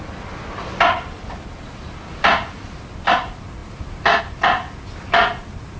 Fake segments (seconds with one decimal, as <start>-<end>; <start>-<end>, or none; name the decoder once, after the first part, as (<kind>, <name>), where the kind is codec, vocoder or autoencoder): none